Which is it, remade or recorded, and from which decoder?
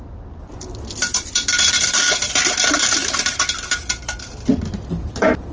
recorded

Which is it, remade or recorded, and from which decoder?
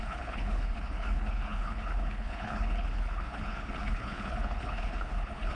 remade, codec, HILCodec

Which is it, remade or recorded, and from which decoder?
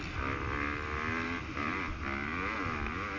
recorded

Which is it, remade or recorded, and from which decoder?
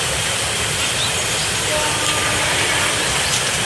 recorded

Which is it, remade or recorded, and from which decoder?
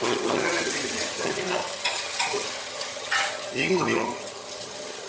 remade, vocoder, HiFi-GAN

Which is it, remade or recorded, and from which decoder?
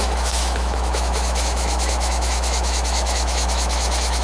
remade, autoencoder, DAC-VAE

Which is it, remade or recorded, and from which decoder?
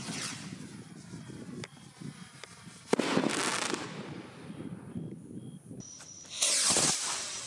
recorded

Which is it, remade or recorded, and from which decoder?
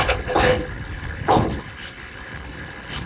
remade, codec, HILCodec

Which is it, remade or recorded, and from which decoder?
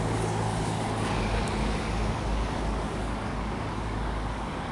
remade, codec, DAC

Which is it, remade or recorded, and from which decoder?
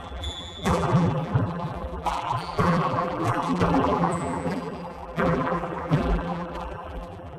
remade, vocoder, BigVGAN v2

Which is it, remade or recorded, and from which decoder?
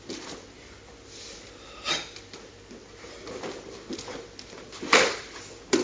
recorded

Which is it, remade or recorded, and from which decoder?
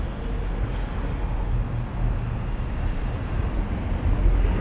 recorded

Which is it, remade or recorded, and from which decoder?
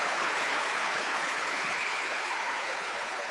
remade, codec, HILCodec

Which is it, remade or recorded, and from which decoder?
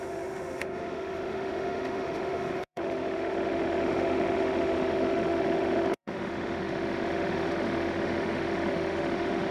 remade, autoencoder, DAC-VAE